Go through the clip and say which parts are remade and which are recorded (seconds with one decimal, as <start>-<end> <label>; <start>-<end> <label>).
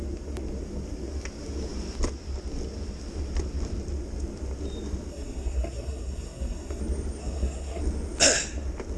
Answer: 0.0-5.1 recorded; 5.1-6.8 remade; 6.8-7.2 recorded; 7.2-7.8 remade; 7.8-9.0 recorded